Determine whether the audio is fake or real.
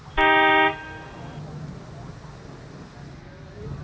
real